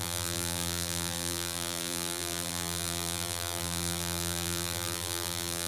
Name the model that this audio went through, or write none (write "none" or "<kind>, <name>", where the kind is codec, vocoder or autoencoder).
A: vocoder, BigVGAN v2